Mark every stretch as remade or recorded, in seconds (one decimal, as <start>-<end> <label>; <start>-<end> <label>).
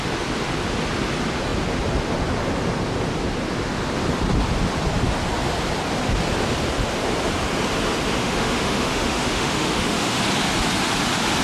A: 0.0-8.2 recorded; 8.2-10.2 remade; 10.2-11.4 recorded